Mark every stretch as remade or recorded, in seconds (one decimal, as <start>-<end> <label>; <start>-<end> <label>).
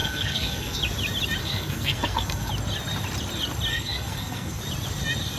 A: 0.0-0.8 remade; 0.8-1.4 recorded; 1.4-2.5 remade; 2.5-3.7 recorded; 3.7-4.6 remade; 4.6-5.4 recorded